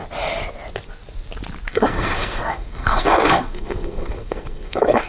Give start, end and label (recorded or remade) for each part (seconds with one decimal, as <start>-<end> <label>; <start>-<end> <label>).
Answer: 0.0-1.7 recorded; 1.7-5.1 remade